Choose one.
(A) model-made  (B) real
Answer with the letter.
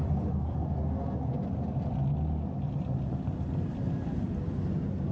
B